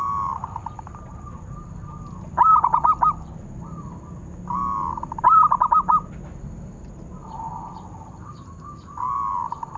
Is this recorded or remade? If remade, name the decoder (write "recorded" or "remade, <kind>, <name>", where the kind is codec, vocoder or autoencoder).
recorded